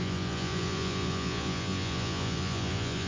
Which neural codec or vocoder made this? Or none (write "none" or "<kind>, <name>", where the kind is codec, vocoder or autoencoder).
vocoder, Vocos